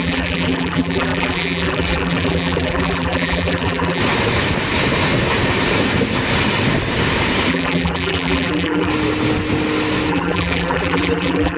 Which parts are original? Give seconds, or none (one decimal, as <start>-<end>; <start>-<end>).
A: 4.0-7.5; 8.9-10.1